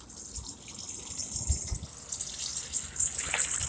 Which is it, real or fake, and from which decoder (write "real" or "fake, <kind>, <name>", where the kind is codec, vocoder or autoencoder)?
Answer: real